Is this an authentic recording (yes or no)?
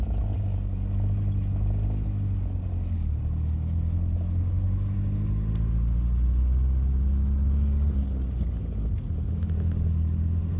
yes